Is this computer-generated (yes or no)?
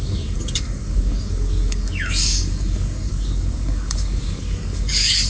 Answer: yes